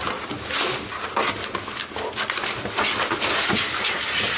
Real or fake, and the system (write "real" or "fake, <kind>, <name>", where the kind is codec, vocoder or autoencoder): real